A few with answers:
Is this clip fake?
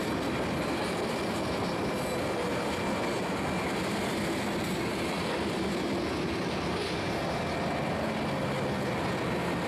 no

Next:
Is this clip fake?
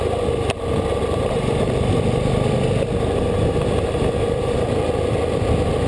no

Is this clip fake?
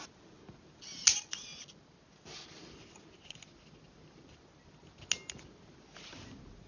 no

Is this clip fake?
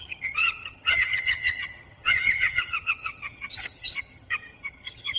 yes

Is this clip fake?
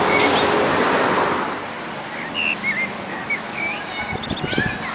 no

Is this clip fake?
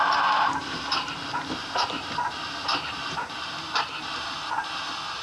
yes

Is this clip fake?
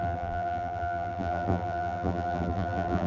yes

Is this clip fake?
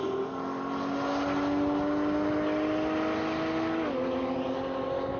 no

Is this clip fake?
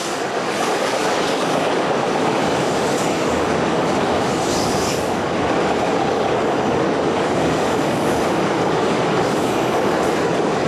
yes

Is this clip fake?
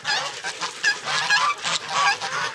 no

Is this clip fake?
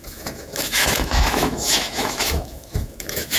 yes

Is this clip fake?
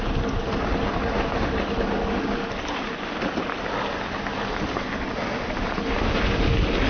no